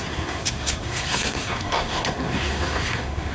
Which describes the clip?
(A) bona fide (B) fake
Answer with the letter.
B